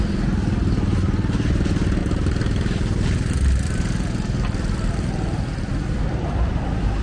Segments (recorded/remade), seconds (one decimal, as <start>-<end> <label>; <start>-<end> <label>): 0.0-2.0 recorded; 2.0-5.7 remade; 5.7-7.0 recorded